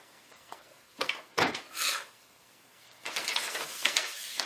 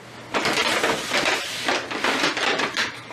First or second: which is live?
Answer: second